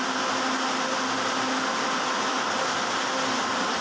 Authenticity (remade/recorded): recorded